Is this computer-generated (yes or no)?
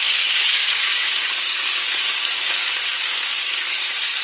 yes